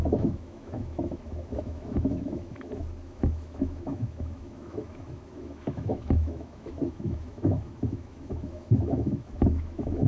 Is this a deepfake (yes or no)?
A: yes